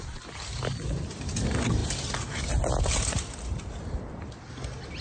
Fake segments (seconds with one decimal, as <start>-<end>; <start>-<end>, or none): none

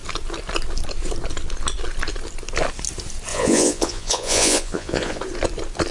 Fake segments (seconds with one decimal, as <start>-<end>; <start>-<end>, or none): 3.3-5.2

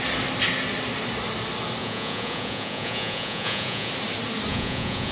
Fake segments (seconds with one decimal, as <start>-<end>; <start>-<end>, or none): 1.8-3.9; 4.5-5.1

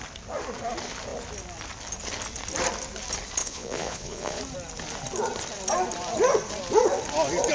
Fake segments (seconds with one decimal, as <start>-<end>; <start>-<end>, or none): 3.4-4.4